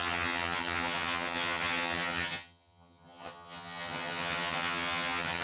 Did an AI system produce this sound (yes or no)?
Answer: yes